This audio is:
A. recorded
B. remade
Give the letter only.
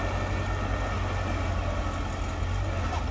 A